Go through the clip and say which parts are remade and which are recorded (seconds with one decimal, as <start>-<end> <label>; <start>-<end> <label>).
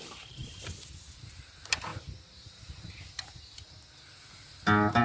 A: 0.0-5.0 recorded